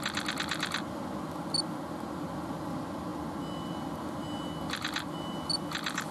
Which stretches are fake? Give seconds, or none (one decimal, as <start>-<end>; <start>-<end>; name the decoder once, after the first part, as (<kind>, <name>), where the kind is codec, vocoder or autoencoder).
none

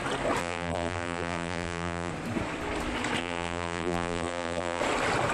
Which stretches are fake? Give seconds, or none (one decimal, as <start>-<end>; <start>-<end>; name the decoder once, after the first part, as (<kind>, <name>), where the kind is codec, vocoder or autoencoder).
0.4-2.1 (vocoder, BigVGAN v2); 3.2-4.8

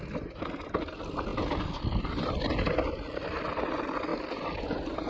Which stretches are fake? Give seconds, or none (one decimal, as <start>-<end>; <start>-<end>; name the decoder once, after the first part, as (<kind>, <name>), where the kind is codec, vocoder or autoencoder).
4.1-5.1 (vocoder, BigVGAN v2)

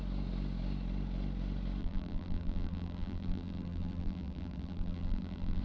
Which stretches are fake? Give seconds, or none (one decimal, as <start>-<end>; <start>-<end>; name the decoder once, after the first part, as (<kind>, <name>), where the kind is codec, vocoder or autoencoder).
1.8-5.6 (vocoder, BigVGAN v2)

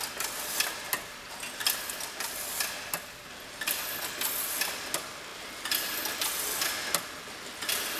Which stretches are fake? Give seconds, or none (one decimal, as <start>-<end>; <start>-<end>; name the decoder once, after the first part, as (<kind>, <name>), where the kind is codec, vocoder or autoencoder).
none